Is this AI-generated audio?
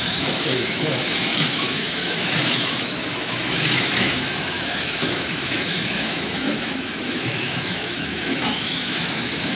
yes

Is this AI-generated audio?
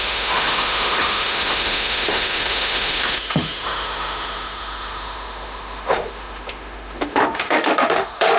yes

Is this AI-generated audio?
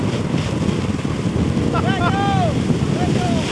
no